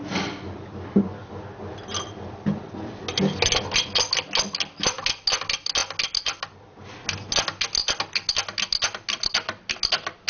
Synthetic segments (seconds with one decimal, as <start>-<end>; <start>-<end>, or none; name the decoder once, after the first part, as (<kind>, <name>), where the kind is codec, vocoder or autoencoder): none